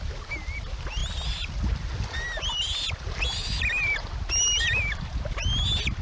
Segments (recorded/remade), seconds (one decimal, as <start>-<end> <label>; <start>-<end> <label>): 0.0-6.0 recorded